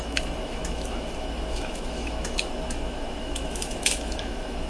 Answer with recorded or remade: remade